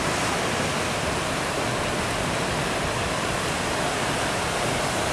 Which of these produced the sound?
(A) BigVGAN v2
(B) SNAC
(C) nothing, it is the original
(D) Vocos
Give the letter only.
C